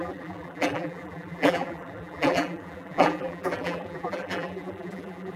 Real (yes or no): no